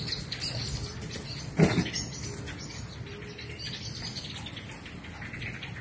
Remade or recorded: recorded